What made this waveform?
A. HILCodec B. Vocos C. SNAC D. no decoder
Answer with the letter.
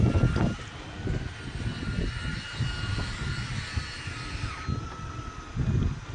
D